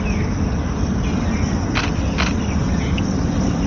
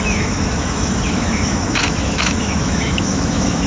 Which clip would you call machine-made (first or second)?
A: second